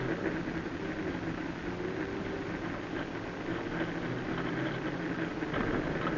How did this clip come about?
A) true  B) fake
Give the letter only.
A